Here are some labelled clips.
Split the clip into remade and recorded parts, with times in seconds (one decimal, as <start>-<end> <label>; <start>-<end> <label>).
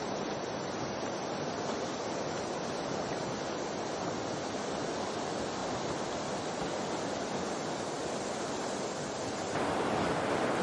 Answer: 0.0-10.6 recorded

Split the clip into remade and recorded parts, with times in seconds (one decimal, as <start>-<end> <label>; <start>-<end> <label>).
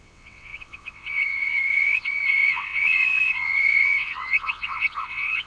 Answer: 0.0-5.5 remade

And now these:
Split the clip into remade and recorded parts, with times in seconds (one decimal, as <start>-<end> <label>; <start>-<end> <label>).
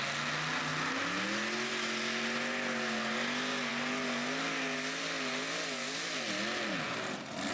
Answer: 0.0-7.5 recorded